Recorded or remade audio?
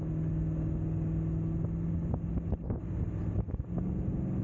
recorded